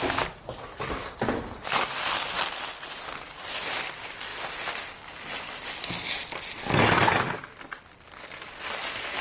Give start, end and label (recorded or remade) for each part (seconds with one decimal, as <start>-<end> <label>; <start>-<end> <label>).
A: 0.0-9.2 recorded